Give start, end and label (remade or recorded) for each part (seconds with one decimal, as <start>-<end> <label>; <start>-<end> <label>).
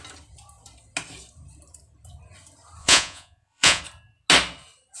0.0-2.8 recorded; 2.8-3.8 remade; 3.8-5.0 recorded